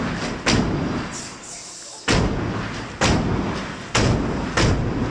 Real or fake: real